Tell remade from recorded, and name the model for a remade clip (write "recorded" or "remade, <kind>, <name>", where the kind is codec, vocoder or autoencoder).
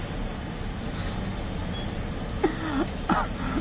recorded